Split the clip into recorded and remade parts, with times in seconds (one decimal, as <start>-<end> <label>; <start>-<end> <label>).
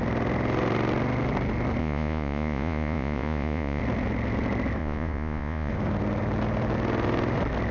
0.0-1.8 recorded; 1.8-3.8 remade; 3.8-4.8 recorded; 4.8-5.7 remade; 5.7-7.7 recorded